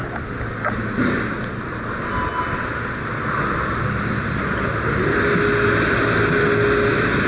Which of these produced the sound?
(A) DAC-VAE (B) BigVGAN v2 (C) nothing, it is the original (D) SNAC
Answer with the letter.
C